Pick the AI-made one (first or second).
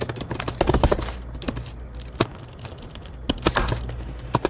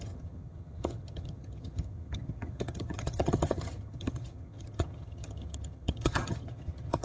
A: second